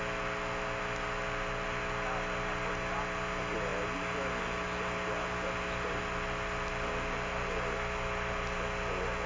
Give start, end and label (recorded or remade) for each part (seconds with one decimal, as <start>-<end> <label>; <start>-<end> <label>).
0.0-9.3 recorded